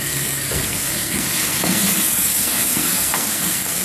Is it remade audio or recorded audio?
remade